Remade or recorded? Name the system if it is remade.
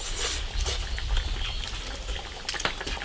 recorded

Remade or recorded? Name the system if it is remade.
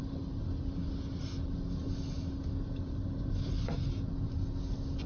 recorded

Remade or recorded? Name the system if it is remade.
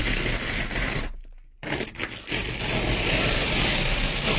recorded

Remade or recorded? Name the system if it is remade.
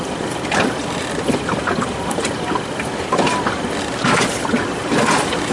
recorded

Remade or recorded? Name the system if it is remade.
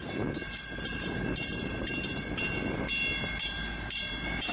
recorded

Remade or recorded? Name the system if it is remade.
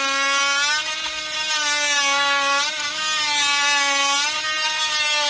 recorded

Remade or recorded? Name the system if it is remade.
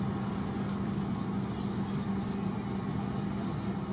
recorded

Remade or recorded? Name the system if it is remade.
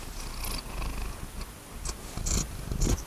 recorded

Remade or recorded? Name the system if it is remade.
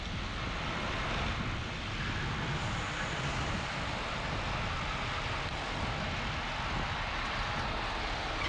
recorded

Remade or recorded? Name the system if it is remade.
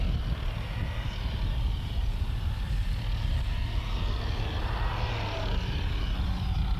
recorded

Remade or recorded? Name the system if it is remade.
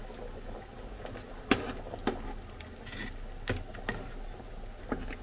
recorded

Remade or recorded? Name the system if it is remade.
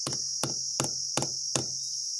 recorded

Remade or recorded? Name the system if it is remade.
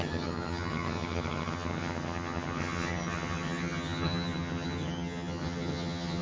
remade, vocoder, HiFi-GAN